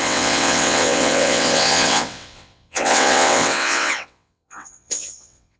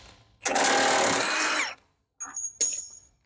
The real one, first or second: second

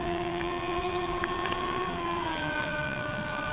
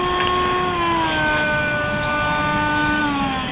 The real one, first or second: second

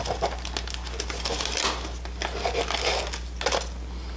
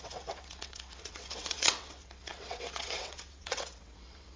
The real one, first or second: first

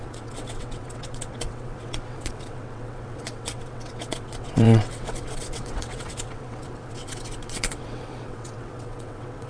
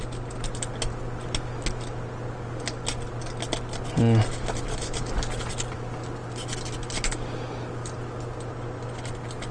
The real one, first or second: second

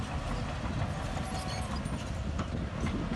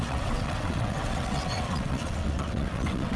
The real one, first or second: first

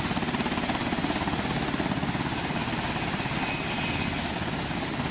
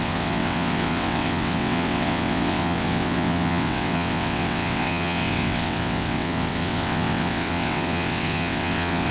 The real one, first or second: first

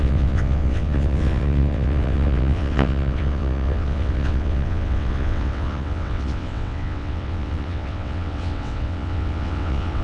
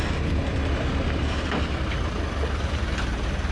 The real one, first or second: second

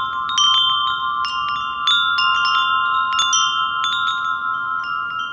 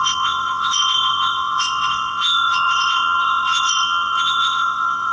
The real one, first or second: first